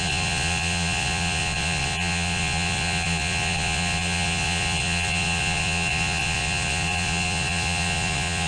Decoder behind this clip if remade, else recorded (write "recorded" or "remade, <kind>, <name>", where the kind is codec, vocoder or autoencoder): remade, vocoder, Vocos